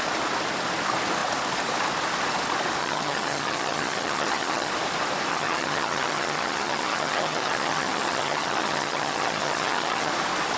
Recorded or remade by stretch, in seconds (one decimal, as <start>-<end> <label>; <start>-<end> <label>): 0.0-2.8 recorded; 2.8-4.7 remade; 4.7-5.3 recorded; 5.3-10.1 remade; 10.1-10.6 recorded